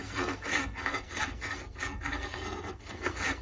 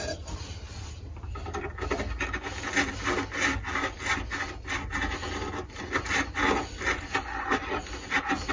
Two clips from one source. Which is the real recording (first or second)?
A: second